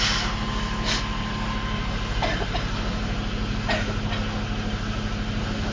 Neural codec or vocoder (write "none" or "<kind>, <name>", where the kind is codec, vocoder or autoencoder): none